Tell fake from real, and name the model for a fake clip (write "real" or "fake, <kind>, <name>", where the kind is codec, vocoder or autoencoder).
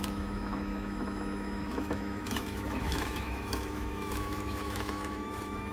fake, autoencoder, DAC-VAE